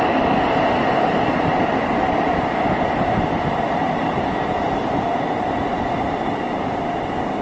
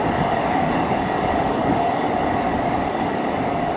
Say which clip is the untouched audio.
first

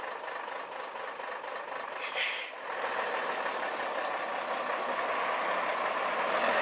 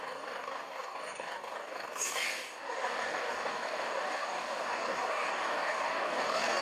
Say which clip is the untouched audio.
first